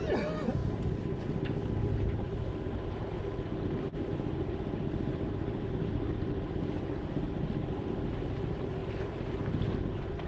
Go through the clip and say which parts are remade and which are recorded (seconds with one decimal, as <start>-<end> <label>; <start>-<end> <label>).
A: 0.0-10.3 recorded